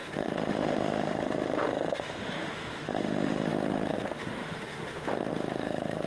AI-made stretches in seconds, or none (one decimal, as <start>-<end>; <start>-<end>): 0.0-6.1